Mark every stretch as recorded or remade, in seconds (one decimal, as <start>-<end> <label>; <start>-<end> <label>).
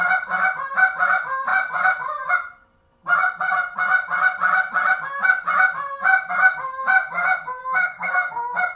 0.0-7.6 recorded; 7.6-8.3 remade; 8.3-8.8 recorded